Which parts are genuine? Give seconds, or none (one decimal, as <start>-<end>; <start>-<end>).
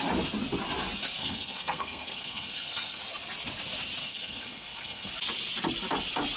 0.0-1.2; 3.0-4.0; 5.1-6.4